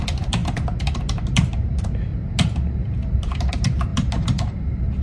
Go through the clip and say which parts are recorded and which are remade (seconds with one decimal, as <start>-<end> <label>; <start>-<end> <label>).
0.0-2.1 remade; 2.1-2.7 recorded; 2.7-5.0 remade